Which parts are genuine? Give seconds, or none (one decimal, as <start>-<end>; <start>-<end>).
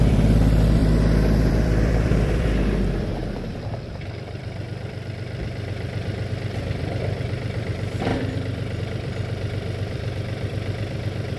0.8-1.5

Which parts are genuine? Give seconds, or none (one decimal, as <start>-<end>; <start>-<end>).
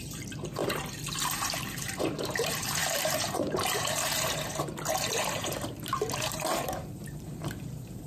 0.6-1.1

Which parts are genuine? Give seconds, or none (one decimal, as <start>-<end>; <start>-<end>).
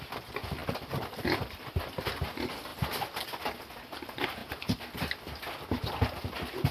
0.0-0.6; 1.8-4.4; 4.9-6.7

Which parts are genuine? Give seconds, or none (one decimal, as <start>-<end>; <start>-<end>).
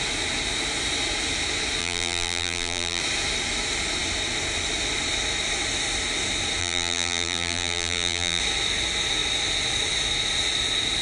0.0-1.8; 3.0-6.6; 8.4-11.0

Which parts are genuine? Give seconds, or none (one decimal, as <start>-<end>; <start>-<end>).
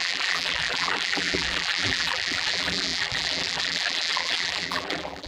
none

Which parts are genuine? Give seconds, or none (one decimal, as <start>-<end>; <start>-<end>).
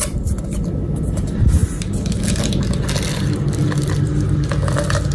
1.6-2.4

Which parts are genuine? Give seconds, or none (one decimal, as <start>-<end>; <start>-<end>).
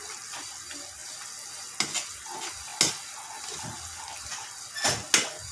0.0-5.5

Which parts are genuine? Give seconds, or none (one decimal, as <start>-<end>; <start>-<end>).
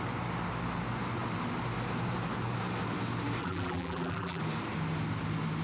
0.0-3.4; 4.4-5.6